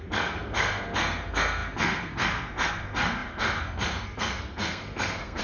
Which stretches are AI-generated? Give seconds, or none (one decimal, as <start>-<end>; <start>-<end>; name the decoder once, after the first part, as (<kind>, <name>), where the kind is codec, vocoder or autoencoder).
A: 0.0-5.4 (codec, SNAC)